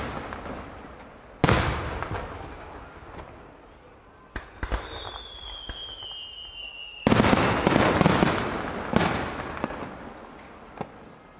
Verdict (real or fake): real